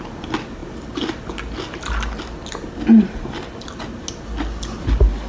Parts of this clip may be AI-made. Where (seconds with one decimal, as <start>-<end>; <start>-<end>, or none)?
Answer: none